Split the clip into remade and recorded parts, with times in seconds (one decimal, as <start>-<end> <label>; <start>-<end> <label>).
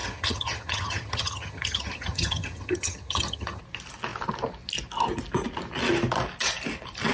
0.0-3.6 remade; 3.6-7.1 recorded